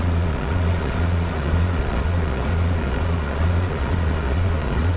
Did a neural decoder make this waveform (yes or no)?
yes